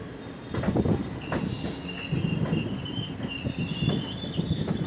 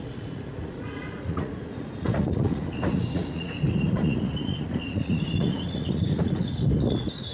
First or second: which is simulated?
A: second